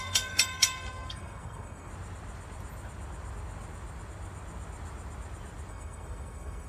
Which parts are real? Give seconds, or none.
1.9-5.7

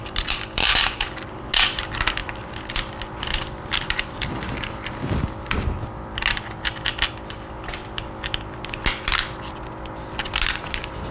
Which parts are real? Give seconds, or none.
0.0-11.1